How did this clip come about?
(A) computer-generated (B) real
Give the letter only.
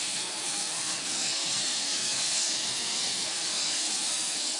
A